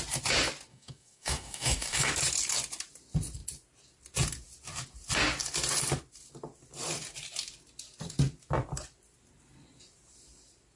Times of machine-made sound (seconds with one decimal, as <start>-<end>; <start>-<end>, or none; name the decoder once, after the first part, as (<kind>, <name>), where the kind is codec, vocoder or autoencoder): 0.7-2.1 (codec, DAC)